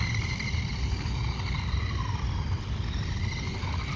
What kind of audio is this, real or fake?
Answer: real